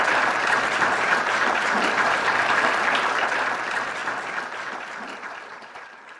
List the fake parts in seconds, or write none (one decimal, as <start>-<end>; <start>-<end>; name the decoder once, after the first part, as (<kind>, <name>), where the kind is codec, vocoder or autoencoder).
0.0-4.0 (vocoder, BigVGAN v2); 5.3-6.2